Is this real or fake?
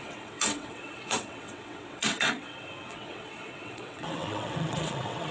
fake